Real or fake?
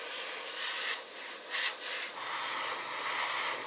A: fake